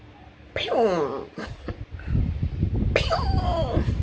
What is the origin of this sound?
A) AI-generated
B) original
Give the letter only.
B